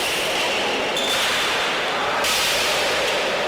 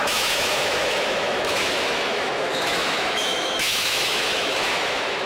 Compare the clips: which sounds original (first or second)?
first